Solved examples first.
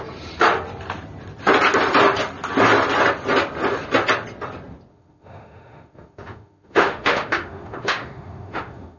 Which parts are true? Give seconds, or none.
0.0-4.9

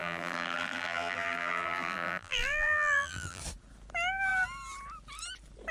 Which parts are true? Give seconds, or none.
3.4-5.7

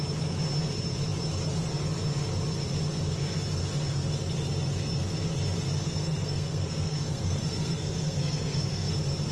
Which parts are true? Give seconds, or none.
0.0-5.8; 8.9-9.3